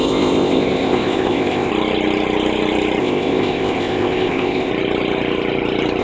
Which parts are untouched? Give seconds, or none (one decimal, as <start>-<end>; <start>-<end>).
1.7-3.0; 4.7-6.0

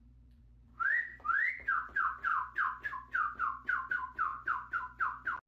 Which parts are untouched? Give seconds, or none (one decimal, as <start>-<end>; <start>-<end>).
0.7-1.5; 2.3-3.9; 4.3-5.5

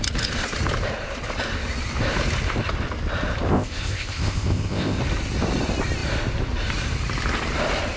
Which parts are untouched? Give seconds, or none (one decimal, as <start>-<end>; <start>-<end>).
0.0-3.5; 5.0-8.0

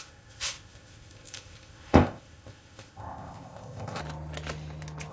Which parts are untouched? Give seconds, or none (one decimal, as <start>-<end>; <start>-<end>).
4.0-5.1

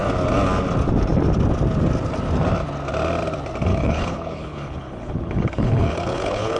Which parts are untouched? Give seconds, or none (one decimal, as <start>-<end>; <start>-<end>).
0.0-3.7